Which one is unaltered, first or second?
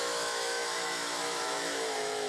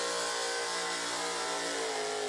second